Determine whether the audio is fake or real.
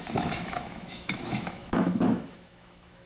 fake